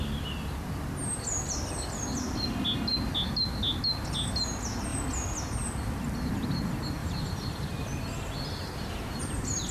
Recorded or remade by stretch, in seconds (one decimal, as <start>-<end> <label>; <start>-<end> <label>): 0.0-7.0 recorded; 7.0-9.2 remade; 9.2-9.7 recorded